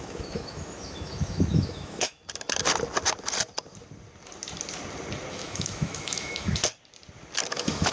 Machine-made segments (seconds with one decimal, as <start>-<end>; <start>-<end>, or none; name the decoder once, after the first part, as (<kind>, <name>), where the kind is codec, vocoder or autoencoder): 0.0-2.2 (autoencoder, DAC-VAE); 5.3-6.6; 7.5-7.9

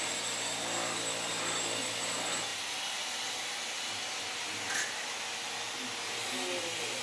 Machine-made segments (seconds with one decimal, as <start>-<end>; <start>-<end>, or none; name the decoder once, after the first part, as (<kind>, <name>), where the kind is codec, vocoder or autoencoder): none

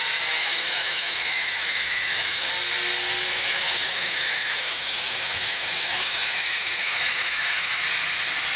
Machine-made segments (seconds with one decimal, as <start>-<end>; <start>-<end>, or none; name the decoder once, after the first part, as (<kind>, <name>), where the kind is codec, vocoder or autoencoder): 0.4-2.5 (autoencoder, DAC-VAE); 3.3-7.8

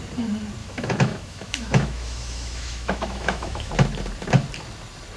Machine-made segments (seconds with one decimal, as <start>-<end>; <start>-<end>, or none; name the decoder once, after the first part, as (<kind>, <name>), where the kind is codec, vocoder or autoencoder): 0.6-3.7 (autoencoder, DAC-VAE)

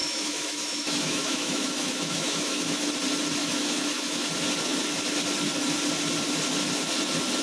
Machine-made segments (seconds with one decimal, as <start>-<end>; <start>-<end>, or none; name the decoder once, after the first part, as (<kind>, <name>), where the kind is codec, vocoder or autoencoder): 0.0-2.9 (autoencoder, DAC-VAE); 3.4-4.3